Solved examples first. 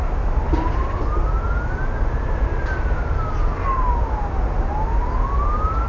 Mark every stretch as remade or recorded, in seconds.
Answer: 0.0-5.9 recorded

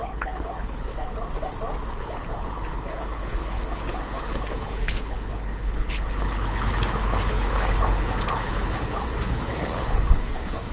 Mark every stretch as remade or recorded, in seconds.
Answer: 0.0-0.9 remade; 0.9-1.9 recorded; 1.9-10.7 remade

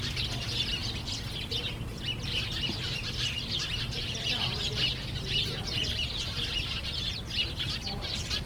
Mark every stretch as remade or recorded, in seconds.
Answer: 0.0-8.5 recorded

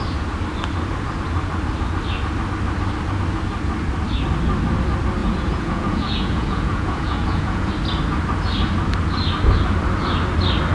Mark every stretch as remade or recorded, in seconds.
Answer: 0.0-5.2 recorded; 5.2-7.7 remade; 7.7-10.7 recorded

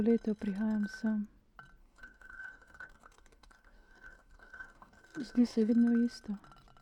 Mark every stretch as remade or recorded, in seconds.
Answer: 0.0-1.8 recorded; 1.8-5.7 remade; 5.7-6.8 recorded

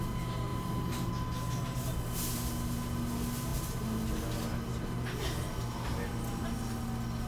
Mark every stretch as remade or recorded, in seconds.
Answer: 0.0-0.5 recorded; 0.5-1.1 remade; 1.1-7.3 recorded